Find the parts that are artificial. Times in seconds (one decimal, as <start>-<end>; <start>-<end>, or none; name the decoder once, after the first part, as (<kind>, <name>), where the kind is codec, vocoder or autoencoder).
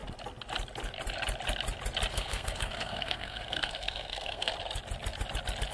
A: 2.1-4.5 (codec, SNAC)